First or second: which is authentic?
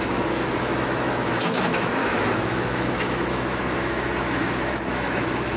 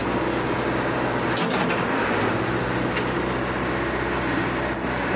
second